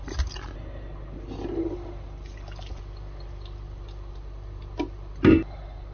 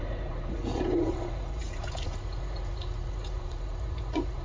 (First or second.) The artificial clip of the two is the second